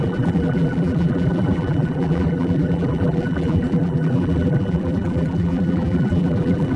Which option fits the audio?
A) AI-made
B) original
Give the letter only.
A